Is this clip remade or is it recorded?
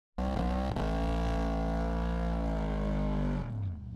recorded